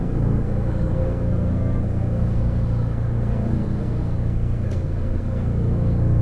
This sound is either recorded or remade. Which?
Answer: remade